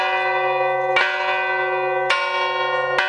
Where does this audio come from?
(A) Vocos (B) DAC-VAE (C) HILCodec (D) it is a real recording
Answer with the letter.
D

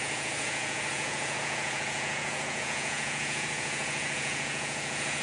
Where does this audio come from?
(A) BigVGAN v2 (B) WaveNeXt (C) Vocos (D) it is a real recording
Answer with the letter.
C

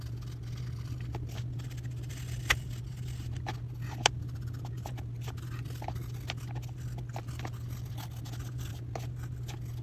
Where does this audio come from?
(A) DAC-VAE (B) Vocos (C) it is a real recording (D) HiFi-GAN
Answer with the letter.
C